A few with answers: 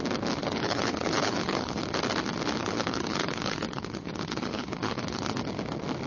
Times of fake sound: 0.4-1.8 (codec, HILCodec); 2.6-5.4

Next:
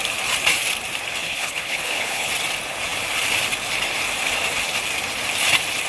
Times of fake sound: 1.2-2.3 (codec, HILCodec)

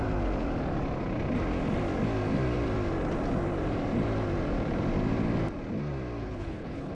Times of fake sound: 6.2-6.9 (codec, HILCodec)

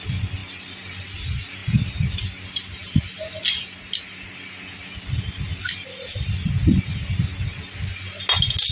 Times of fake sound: none

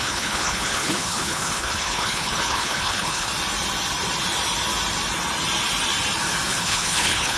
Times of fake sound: 0.0-3.3 (codec, HILCodec); 6.5-7.4

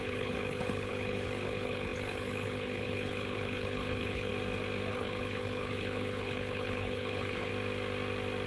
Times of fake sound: 0.0-4.3 (codec, HILCodec); 4.9-7.5

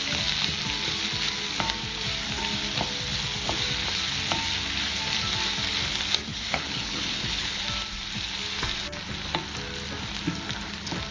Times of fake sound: 6.3-7.6 (codec, HILCodec)